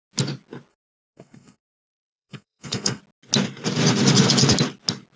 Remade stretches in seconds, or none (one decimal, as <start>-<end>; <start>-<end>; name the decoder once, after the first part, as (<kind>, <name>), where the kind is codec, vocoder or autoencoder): 0.7-3.0 (codec, SNAC)